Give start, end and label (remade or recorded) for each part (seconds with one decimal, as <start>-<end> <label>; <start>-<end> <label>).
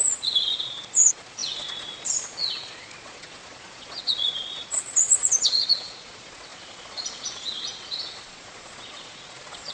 0.0-9.7 remade